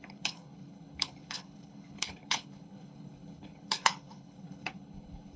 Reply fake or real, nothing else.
fake